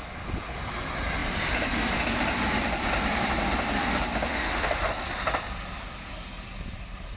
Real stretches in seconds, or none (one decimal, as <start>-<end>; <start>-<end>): 0.0-4.3; 4.9-7.2